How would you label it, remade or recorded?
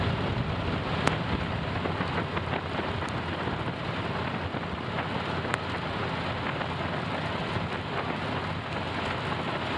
recorded